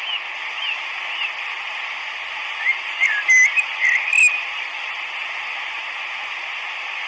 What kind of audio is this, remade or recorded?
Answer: recorded